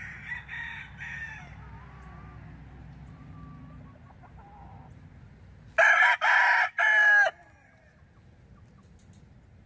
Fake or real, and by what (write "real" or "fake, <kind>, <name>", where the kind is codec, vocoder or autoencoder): real